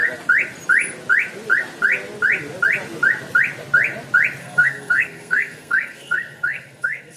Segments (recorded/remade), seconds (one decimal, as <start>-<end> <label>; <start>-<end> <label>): 0.0-4.4 recorded; 4.4-7.2 remade